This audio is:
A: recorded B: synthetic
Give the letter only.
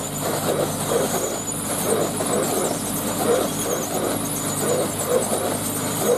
A